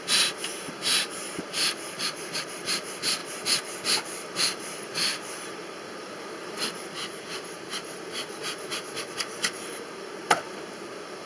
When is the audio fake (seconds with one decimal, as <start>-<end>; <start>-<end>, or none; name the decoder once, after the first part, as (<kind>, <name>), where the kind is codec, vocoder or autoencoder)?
0.0-11.3 (vocoder, BigVGAN v2)